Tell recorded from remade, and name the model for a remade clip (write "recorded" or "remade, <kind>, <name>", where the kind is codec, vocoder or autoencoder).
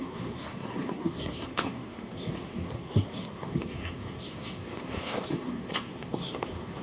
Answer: remade, codec, SNAC